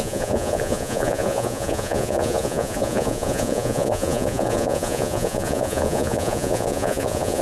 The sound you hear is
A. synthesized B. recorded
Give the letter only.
A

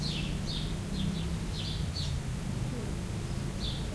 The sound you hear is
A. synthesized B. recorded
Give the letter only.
B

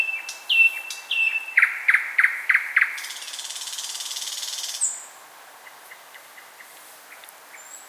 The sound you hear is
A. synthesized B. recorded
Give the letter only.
B